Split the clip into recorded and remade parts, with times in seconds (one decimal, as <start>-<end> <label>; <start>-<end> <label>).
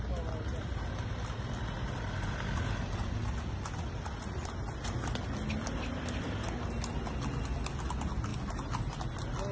0.0-9.5 recorded